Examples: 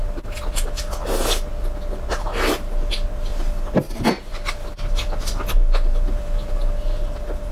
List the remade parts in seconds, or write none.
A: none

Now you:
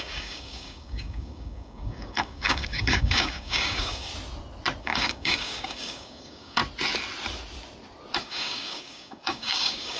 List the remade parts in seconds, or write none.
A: 0.0-4.1 (codec, DAC); 4.8-6.6; 8.2-10.0

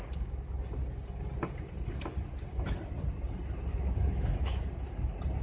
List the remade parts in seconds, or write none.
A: 3.7-4.6 (autoencoder, DAC-VAE)

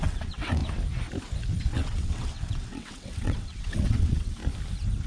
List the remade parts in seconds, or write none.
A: 0.0-0.6 (vocoder, WaveNeXt); 1.6-4.4